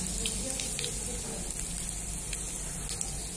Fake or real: real